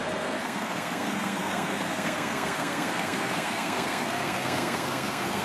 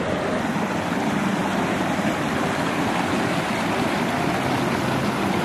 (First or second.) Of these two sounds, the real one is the second